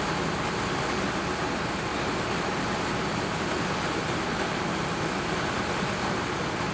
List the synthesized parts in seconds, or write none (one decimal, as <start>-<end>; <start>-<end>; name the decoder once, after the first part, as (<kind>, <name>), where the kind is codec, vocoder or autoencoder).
1.9-5.2 (vocoder, BigVGAN v2)